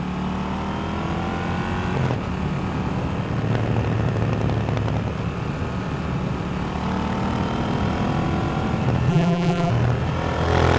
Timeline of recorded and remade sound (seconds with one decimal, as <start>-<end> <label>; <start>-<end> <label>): 0.0-9.1 recorded; 9.1-9.7 remade; 9.7-10.8 recorded